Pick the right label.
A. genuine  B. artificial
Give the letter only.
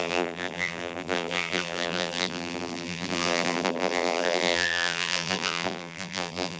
B